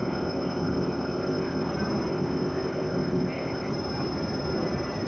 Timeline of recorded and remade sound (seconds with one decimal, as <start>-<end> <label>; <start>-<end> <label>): 0.0-1.7 remade; 1.7-2.1 recorded; 2.1-3.7 remade; 3.7-5.1 recorded